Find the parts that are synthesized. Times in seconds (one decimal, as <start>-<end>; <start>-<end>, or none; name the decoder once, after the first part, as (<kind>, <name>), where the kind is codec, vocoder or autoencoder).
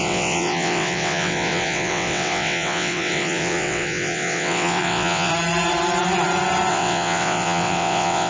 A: 0.0-5.3 (vocoder, WaveNeXt); 6.7-8.3